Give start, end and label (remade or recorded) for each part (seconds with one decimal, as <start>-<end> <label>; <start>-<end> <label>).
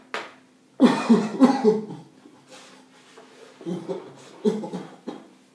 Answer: 0.0-5.5 recorded